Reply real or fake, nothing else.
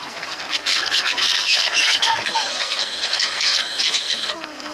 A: fake